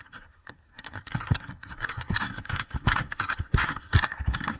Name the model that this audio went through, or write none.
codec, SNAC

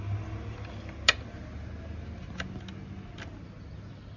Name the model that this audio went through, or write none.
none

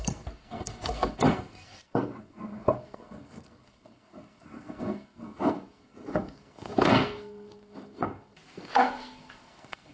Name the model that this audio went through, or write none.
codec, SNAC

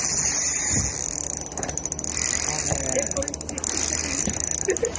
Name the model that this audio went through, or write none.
none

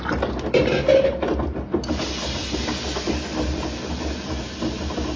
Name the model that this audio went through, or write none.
none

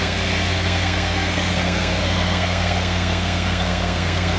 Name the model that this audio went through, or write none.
codec, SNAC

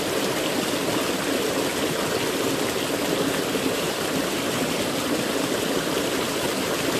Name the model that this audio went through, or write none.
none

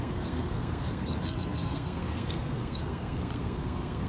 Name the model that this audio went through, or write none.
codec, SNAC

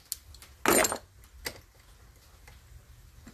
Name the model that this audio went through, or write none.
none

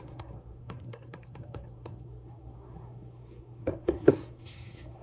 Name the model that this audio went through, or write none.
codec, SNAC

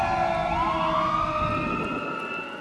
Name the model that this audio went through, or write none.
none